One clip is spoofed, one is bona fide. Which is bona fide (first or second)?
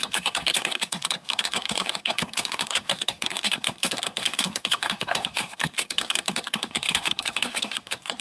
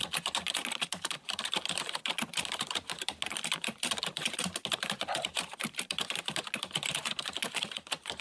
second